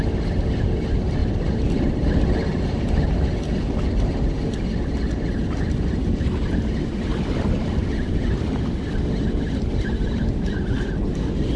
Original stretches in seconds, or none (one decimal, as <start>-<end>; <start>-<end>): 0.0-1.2; 4.0-7.1; 10.9-11.6